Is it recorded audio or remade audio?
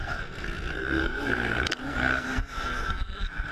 remade